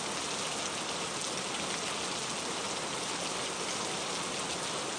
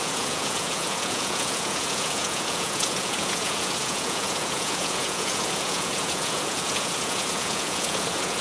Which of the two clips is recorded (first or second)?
first